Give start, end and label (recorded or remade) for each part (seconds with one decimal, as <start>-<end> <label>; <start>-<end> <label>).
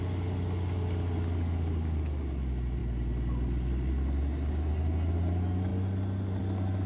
0.0-6.9 recorded